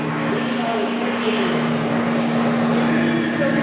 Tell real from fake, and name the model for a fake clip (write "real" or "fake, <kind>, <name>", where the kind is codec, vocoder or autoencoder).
real